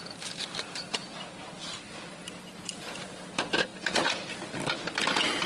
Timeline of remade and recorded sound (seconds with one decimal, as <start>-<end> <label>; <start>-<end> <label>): 0.0-5.5 recorded